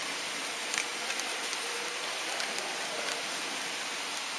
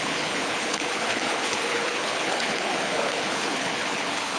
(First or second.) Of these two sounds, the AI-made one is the second